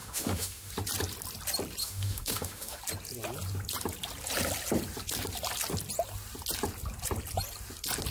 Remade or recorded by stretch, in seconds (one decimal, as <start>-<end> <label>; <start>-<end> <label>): 0.0-0.7 remade; 0.7-1.8 recorded; 1.8-2.8 remade; 2.8-8.1 recorded